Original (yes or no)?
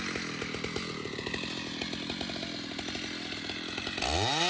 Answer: yes